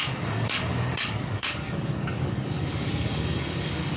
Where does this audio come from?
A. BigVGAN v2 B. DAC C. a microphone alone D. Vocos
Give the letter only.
B